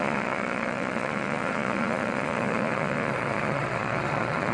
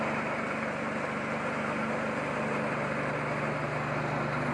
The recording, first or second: second